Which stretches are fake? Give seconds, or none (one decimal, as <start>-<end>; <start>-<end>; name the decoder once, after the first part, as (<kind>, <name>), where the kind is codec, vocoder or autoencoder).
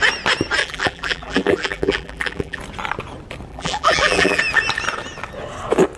0.6-2.6 (vocoder, BigVGAN v2); 3.5-4.4